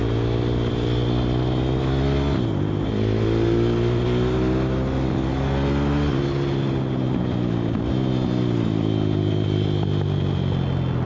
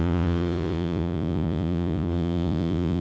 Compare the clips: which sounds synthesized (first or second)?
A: second